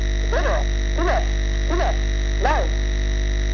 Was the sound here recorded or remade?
recorded